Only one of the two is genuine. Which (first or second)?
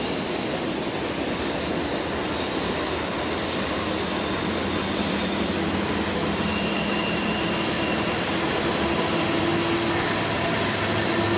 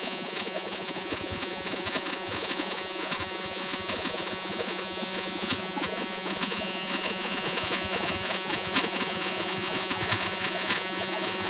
first